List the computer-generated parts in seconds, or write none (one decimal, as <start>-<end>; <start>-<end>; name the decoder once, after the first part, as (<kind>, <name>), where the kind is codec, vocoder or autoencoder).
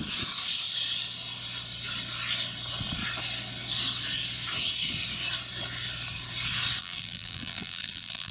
6.8-8.3 (vocoder, BigVGAN v2)